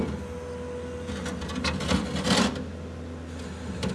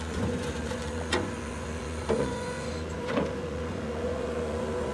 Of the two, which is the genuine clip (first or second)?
first